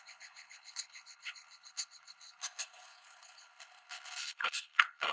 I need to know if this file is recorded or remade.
remade